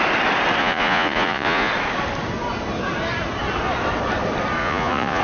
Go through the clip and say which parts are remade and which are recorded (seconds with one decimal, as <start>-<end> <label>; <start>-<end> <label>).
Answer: 0.0-0.6 recorded; 0.6-1.7 remade; 1.7-4.6 recorded; 4.6-5.2 remade